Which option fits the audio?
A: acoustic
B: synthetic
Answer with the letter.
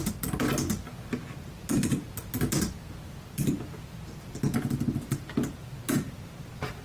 A